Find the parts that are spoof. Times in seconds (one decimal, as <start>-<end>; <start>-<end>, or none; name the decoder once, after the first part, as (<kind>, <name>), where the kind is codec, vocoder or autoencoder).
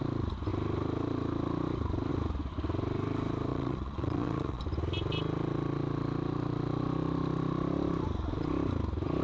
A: 3.5-4.6 (vocoder, Vocos)